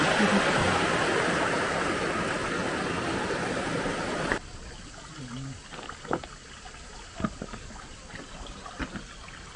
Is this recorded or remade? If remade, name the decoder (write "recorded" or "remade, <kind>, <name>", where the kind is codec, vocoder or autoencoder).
recorded